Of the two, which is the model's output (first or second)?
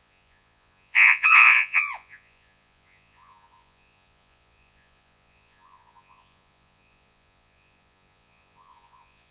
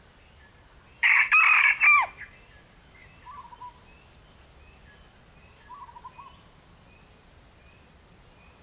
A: first